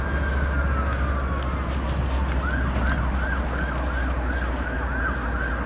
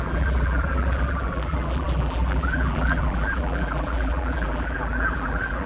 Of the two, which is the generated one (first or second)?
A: second